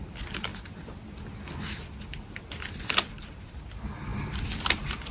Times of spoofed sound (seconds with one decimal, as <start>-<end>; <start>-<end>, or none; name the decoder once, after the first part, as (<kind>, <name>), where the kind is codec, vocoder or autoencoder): 0.5-3.6 (vocoder, BigVGAN v2)